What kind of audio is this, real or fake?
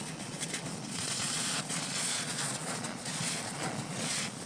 fake